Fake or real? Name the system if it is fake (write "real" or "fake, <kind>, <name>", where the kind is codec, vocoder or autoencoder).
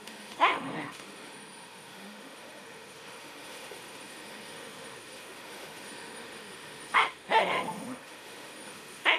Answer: fake, autoencoder, DAC-VAE